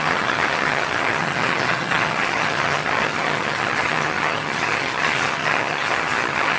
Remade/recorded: remade